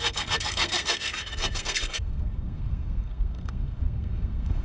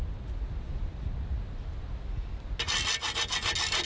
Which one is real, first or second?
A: second